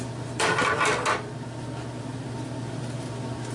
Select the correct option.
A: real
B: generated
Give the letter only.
A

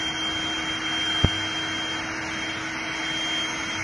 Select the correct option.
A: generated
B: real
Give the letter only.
B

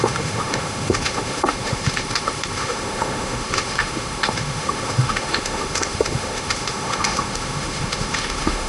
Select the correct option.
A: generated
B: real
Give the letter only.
A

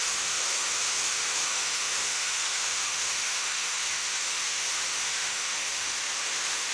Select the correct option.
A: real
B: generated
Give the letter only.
B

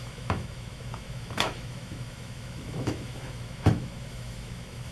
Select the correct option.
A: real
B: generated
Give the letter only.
B